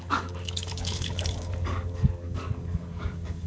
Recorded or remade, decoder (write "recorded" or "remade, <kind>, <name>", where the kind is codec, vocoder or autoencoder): remade, codec, DAC